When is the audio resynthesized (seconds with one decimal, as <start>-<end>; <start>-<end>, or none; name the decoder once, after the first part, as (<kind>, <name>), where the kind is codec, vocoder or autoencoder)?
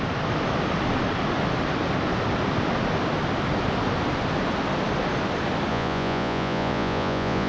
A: 5.7-7.5 (vocoder, Vocos)